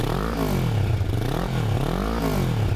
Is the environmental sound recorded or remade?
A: recorded